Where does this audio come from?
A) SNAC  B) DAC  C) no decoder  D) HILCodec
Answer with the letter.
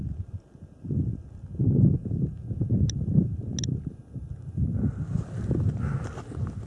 C